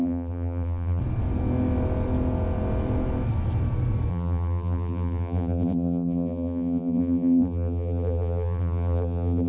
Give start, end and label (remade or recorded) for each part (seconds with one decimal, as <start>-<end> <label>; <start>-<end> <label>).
0.0-1.0 remade; 1.0-4.1 recorded; 4.1-9.5 remade